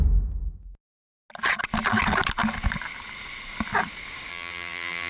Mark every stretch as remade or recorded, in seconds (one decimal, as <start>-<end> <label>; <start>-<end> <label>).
0.0-4.3 recorded; 4.3-5.1 remade